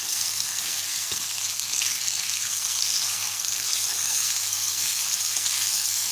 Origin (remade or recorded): remade